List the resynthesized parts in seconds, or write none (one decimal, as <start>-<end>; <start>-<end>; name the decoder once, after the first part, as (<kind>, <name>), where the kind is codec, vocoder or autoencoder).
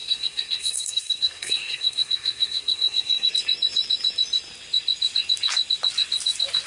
0.0-3.3 (codec, SNAC)